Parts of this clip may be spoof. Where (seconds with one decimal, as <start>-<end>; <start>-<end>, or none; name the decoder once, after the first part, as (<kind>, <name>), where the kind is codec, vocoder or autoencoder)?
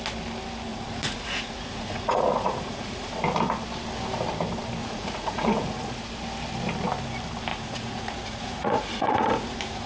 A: 0.7-3.1 (vocoder, Vocos); 4.8-6.0; 7.5-9.9